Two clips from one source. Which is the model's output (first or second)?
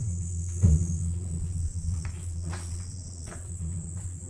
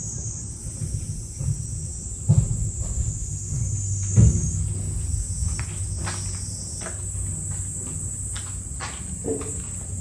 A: first